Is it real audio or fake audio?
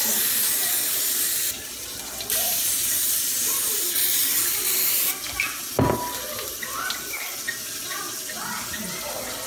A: real